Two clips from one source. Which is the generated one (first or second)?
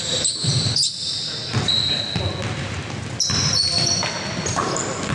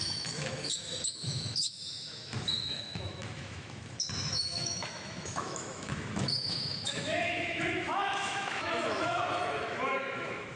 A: second